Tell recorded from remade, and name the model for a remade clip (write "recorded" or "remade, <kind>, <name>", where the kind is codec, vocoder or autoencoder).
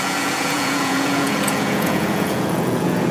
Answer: remade, vocoder, Vocos